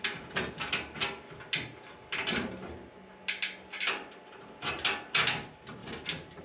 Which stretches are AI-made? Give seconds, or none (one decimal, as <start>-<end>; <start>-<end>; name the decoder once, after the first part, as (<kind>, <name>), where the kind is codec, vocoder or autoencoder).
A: none